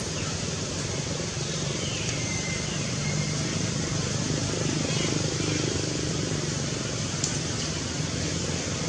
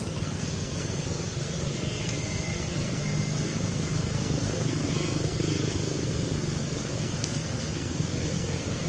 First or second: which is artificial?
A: second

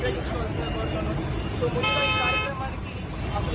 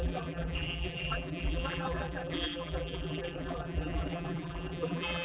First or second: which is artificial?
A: second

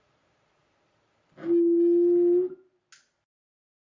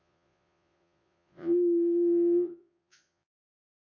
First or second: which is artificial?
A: second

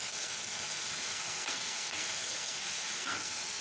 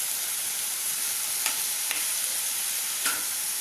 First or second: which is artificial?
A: first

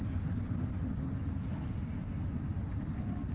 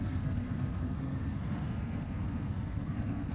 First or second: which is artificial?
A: second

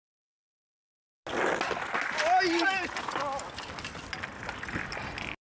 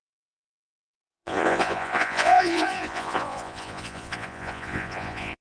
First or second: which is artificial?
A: second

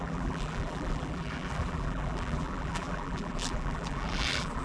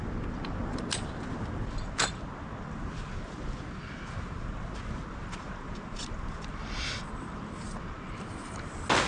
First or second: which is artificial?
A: first